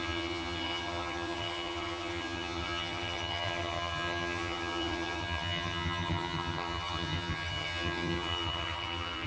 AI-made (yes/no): yes